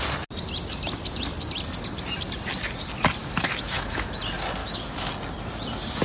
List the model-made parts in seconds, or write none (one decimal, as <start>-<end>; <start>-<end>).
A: 3.2-4.1; 4.6-5.1